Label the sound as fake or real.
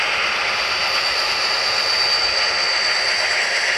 real